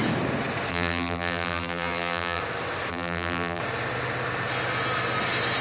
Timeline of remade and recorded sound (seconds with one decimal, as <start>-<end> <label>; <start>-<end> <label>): 0.0-0.7 recorded; 0.7-2.4 remade; 2.4-2.9 recorded; 2.9-3.6 remade; 3.6-5.6 recorded